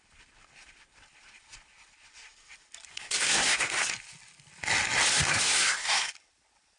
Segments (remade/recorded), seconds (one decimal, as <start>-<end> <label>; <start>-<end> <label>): 0.0-2.9 recorded; 2.9-3.9 remade; 3.9-5.1 recorded; 5.1-6.1 remade; 6.1-6.8 recorded